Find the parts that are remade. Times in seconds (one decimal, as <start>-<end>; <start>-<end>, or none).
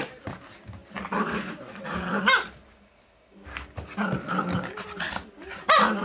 none